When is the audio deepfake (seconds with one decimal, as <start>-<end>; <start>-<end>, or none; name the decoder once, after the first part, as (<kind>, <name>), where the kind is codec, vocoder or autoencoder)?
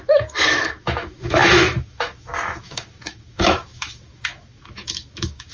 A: 0.0-5.5 (autoencoder, DAC-VAE)